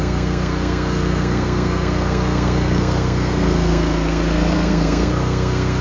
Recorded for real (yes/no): no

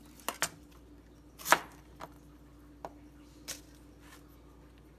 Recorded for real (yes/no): yes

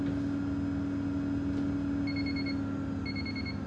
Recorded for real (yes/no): yes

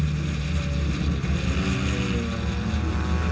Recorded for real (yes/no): yes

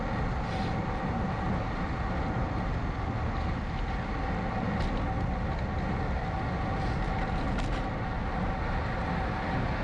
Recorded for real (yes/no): yes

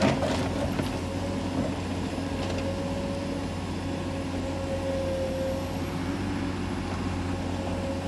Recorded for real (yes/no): yes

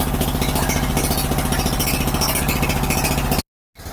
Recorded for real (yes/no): yes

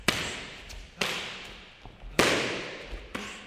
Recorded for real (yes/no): yes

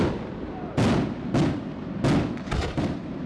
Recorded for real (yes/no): yes